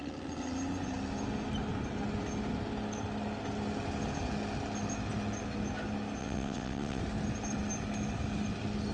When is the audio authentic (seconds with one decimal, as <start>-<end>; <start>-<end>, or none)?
0.0-6.2; 7.0-8.9